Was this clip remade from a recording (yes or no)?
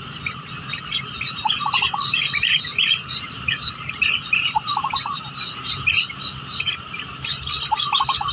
yes